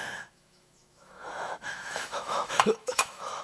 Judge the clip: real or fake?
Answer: fake